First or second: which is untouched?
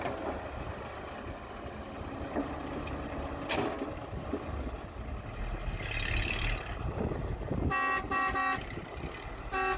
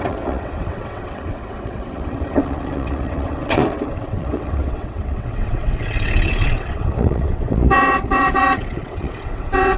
first